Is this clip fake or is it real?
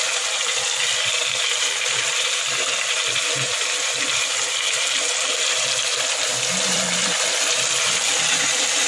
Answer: fake